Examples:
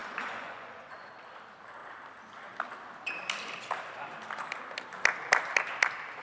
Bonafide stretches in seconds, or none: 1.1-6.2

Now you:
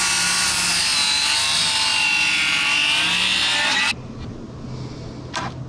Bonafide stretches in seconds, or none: 0.0-5.7